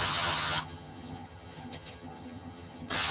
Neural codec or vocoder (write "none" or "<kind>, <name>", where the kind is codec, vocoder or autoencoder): vocoder, HiFi-GAN